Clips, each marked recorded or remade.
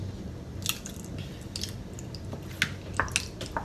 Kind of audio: recorded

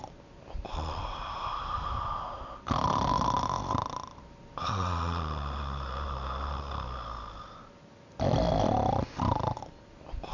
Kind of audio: recorded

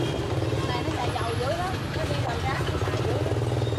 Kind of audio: recorded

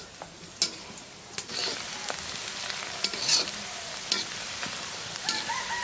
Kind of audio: recorded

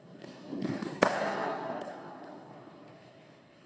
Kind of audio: remade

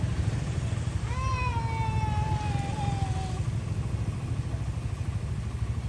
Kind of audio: recorded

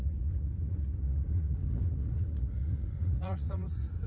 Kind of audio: remade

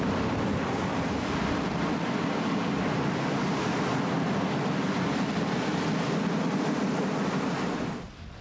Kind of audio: recorded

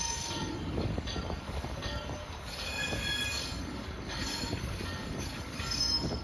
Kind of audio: remade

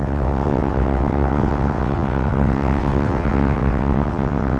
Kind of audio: remade